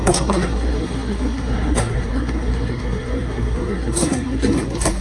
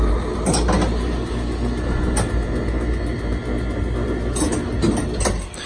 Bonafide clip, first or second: second